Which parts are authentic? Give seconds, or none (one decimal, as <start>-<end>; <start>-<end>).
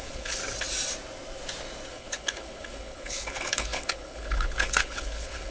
0.4-1.9